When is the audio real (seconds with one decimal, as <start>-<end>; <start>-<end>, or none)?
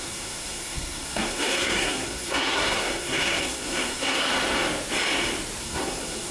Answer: 4.3-5.6